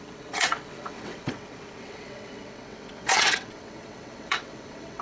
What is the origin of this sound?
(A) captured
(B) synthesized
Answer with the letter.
B